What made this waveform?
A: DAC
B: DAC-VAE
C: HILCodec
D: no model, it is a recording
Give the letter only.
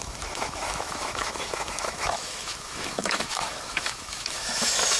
B